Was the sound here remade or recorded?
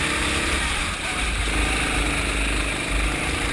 recorded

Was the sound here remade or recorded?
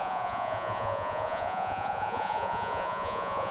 remade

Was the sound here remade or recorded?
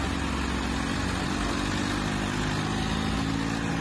recorded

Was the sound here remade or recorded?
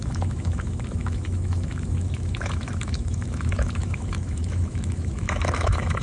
remade